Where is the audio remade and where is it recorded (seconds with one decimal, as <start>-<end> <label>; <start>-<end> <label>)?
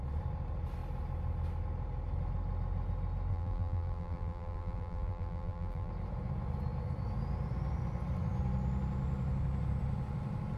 0.0-3.3 recorded; 3.3-5.9 remade; 5.9-10.6 recorded